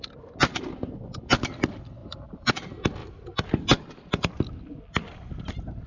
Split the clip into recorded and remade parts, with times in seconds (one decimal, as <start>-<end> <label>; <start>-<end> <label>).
0.0-2.0 recorded; 2.0-2.5 remade; 2.5-3.0 recorded; 3.0-4.4 remade; 4.4-5.9 recorded